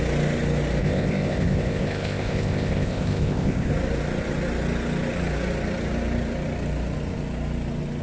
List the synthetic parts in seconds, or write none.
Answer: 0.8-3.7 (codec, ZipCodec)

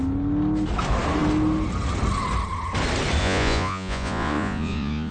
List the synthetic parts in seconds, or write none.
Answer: 3.2-5.1 (vocoder, Vocos)

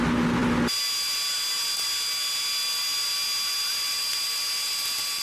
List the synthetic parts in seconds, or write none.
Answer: none

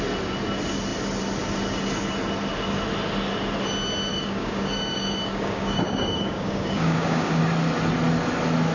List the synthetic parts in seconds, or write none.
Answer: 4.1-7.4 (codec, DAC)